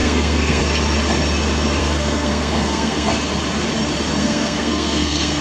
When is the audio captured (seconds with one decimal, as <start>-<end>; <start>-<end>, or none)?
0.6-1.8; 3.1-4.2